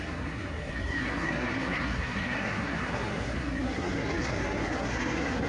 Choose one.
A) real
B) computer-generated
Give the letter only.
B